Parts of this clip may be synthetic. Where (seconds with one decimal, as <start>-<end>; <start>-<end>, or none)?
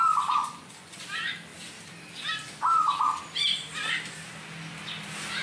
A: 0.4-1.1